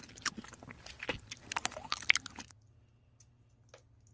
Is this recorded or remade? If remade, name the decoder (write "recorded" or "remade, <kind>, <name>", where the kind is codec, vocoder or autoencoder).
recorded